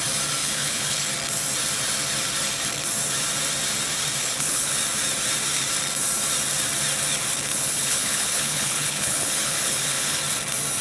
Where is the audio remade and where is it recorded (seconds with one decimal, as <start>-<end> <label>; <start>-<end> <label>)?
0.0-0.4 recorded; 0.4-1.1 remade; 1.1-4.2 recorded; 4.2-4.7 remade; 4.7-7.5 recorded; 7.5-10.2 remade; 10.2-10.8 recorded